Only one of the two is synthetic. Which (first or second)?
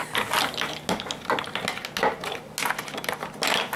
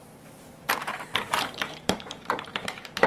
second